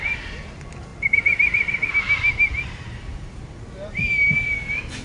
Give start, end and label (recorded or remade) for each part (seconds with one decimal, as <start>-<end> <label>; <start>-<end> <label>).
0.0-5.0 recorded